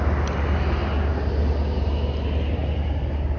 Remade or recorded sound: recorded